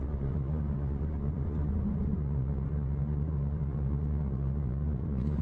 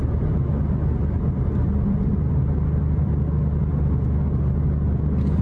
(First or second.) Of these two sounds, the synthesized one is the first